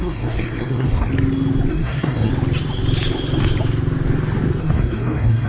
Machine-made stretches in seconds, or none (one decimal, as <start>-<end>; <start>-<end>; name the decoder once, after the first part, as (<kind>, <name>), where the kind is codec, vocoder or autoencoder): 0.0-1.1 (codec, SNAC); 1.7-2.3; 4.6-5.5